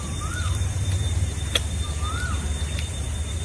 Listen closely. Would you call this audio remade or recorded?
remade